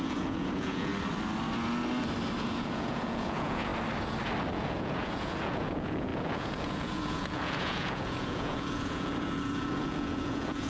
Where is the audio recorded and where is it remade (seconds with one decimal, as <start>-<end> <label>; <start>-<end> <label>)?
0.0-0.9 remade; 0.9-2.4 recorded; 2.4-3.7 remade; 3.7-4.5 recorded; 4.5-10.7 remade